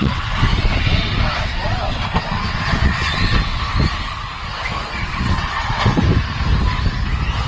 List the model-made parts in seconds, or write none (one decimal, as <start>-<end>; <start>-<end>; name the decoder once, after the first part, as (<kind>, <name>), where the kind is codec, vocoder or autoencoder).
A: 0.0-3.7 (vocoder, WaveNeXt); 5.0-6.0